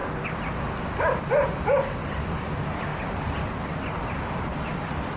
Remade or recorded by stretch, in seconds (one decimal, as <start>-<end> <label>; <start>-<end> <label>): 0.0-2.0 remade; 2.0-2.9 recorded; 2.9-4.5 remade; 4.5-5.2 recorded